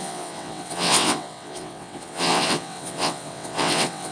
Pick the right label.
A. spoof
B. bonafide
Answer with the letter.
A